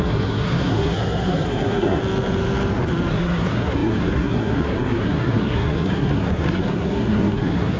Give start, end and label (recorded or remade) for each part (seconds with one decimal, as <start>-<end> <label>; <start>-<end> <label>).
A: 0.0-2.0 remade; 2.0-3.1 recorded; 3.1-7.8 remade